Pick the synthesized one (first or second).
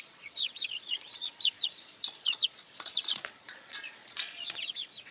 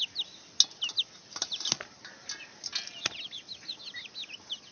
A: first